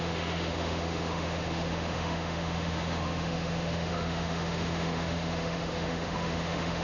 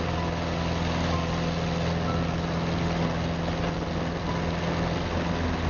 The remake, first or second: first